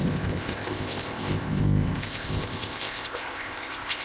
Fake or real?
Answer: fake